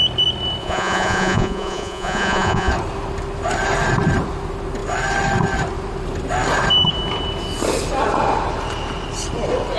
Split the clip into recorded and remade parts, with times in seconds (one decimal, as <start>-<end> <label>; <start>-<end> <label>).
0.0-0.6 recorded; 0.6-2.7 remade; 2.7-9.8 recorded